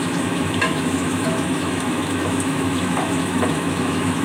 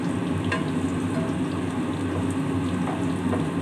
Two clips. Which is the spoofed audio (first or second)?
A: first